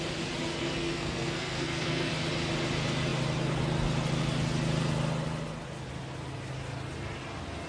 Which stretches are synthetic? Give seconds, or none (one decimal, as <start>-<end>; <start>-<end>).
0.6-2.1